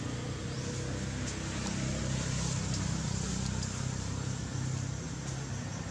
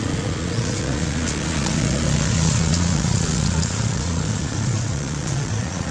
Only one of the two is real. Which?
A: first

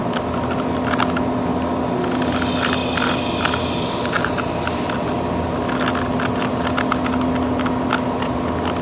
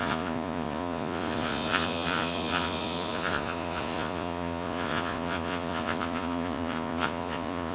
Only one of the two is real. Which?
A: first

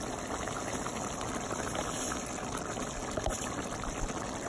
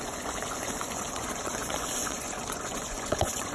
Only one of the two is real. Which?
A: first